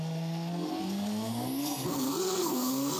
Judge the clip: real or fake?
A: fake